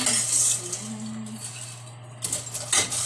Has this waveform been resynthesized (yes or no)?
no